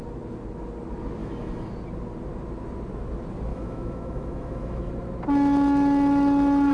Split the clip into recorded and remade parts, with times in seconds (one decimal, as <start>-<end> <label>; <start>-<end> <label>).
0.0-1.2 recorded; 1.2-1.7 remade; 1.7-3.5 recorded; 3.5-4.9 remade; 4.9-6.7 recorded